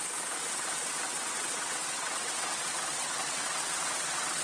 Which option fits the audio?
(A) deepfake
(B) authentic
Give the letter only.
A